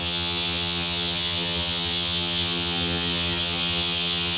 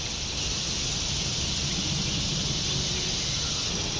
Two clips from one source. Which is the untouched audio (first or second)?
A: second